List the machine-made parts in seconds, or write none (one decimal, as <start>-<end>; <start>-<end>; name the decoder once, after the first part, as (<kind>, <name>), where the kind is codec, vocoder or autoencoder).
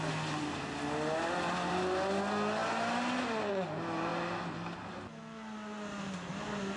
none